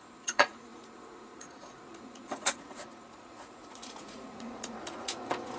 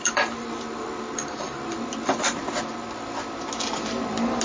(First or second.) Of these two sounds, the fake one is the first